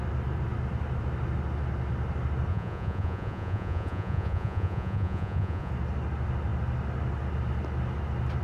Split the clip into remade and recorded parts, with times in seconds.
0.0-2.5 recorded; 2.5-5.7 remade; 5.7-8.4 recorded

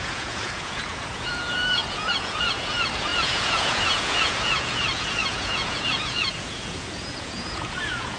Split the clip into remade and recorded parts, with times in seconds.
0.0-8.2 remade

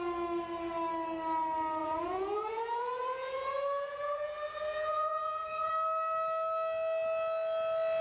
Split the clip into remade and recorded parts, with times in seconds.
0.0-1.8 recorded; 1.8-5.7 remade; 5.7-8.0 recorded

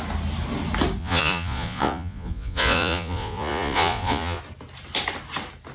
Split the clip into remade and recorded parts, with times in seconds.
0.0-1.0 recorded; 1.0-4.4 remade; 4.4-5.7 recorded

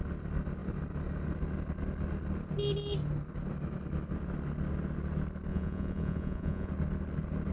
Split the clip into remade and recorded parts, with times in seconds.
0.0-5.5 recorded; 5.5-6.7 remade; 6.7-7.5 recorded

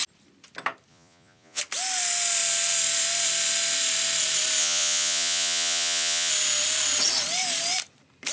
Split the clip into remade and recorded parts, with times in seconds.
0.0-0.9 recorded; 0.9-1.6 remade; 1.6-4.6 recorded; 4.6-6.3 remade; 6.3-8.3 recorded